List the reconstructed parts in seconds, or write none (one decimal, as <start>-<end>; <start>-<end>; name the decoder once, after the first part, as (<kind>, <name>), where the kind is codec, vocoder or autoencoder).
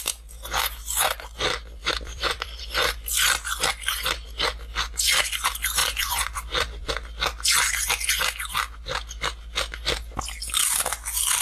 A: 1.8-2.6 (vocoder, BigVGAN v2); 5.8-6.9